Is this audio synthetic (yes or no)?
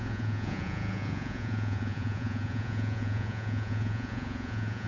yes